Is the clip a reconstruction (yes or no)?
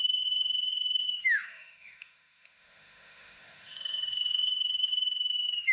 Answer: yes